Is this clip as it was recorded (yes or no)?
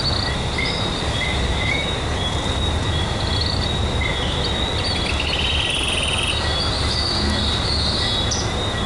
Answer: yes